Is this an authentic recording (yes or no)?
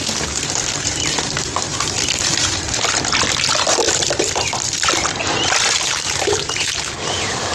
no